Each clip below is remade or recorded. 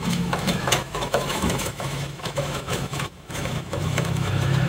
remade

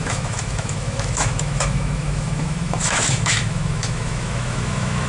remade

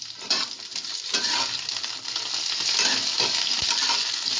recorded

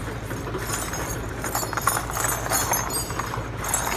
recorded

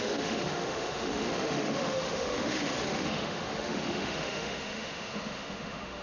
remade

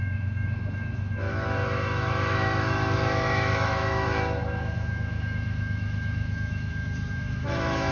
remade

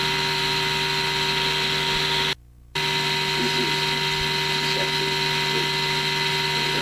recorded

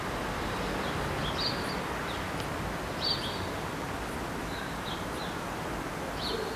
recorded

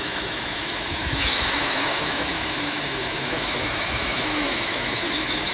remade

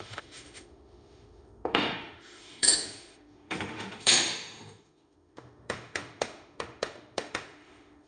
remade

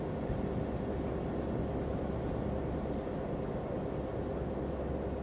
recorded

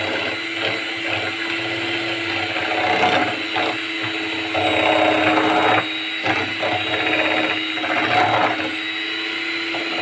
recorded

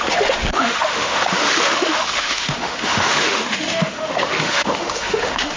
remade